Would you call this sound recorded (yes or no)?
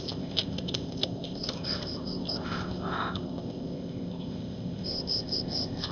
no